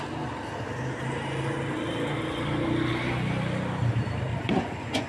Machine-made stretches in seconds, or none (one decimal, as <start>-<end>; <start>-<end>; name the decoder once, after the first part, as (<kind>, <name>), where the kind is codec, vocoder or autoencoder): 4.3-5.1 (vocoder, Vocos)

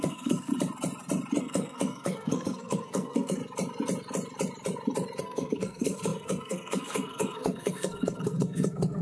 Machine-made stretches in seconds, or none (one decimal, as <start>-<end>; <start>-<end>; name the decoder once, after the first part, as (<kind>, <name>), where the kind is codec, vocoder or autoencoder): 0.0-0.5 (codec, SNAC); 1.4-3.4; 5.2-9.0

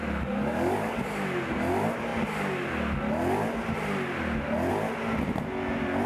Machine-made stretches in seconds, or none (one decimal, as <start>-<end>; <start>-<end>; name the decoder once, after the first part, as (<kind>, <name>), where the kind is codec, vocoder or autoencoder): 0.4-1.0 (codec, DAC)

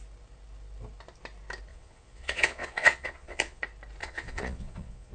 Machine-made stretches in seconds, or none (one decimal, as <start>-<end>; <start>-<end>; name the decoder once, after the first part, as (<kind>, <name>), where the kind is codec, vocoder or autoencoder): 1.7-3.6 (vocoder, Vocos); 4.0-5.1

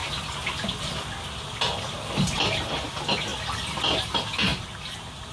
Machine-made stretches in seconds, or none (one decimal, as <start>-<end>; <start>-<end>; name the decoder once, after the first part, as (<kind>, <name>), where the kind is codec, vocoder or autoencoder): 4.5-5.3 (vocoder, BigVGAN v2)

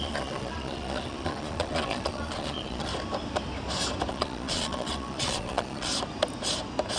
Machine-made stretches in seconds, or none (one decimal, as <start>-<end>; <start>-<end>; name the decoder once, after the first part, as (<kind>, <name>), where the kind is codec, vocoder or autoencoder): 0.0-2.9 (vocoder, Vocos); 4.1-5.9

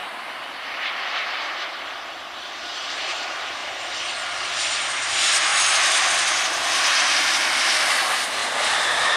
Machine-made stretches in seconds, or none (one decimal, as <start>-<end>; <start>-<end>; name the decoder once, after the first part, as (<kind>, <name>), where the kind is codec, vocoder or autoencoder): 1.7-8.4 (vocoder, BigVGAN v2)

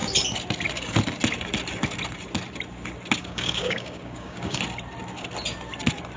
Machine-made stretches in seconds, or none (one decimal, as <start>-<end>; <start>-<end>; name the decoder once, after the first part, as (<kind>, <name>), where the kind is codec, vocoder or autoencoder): 3.2-4.6 (codec, DAC)